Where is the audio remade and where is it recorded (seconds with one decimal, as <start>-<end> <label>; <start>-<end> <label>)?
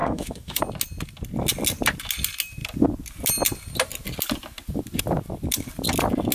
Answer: 0.0-0.6 remade; 0.6-6.3 recorded